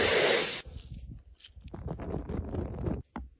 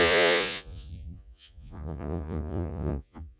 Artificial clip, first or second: second